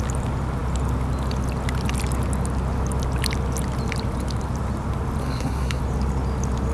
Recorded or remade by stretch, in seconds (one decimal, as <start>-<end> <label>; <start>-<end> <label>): 0.0-5.2 recorded; 5.2-5.8 remade; 5.8-6.7 recorded